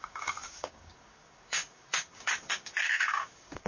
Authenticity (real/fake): fake